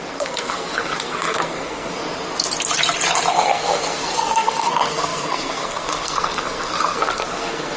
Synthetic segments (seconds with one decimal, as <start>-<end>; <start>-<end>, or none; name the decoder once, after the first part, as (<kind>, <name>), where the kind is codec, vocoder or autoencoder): 0.0-2.0 (codec, SNAC); 3.3-7.8